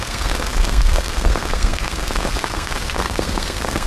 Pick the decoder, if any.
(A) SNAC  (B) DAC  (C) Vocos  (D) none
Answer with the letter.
A